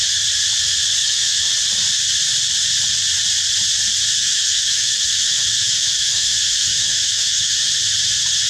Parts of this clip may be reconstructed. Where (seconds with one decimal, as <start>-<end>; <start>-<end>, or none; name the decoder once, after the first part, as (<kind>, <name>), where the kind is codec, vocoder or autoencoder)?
1.0-1.5 (autoencoder, DAC-VAE); 4.1-7.7

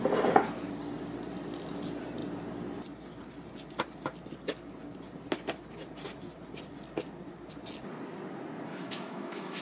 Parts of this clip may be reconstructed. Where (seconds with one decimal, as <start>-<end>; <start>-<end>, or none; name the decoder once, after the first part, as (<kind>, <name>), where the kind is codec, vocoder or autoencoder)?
8.7-9.6 (autoencoder, DAC-VAE)

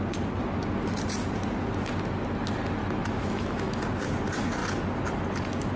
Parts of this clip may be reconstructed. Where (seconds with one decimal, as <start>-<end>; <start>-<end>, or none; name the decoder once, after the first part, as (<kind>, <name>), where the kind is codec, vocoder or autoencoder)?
2.8-3.8 (autoencoder, DAC-VAE)

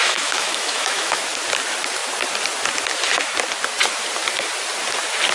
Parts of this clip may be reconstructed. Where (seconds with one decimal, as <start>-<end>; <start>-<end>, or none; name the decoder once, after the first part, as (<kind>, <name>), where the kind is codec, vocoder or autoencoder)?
0.0-1.2 (autoencoder, DAC-VAE)

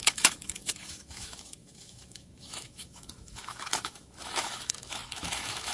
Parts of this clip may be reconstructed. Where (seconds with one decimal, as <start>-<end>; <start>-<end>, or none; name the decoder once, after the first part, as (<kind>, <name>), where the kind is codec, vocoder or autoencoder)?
0.0-5.7 (autoencoder, DAC-VAE)

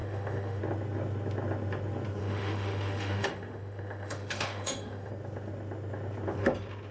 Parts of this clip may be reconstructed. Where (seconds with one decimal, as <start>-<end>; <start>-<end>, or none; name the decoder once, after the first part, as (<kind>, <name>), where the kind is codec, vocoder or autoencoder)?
0.0-0.6 (autoencoder, DAC-VAE); 2.2-5.1

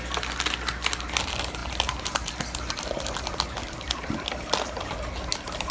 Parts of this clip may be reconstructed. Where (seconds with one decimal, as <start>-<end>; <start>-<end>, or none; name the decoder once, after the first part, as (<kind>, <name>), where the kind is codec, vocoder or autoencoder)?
none